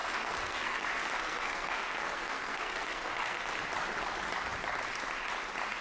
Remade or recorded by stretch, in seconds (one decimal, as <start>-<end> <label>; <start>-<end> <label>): 0.0-3.5 remade; 3.5-5.8 recorded